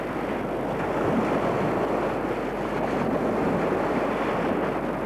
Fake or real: real